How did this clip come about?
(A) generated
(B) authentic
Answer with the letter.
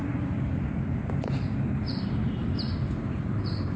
A